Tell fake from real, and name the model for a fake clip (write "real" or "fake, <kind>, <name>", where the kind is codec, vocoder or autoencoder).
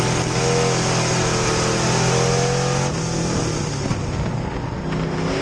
real